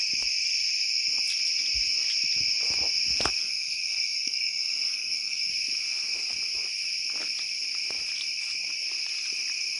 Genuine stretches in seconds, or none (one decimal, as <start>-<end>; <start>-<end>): 0.0-3.4; 5.5-9.8